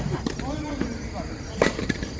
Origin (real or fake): fake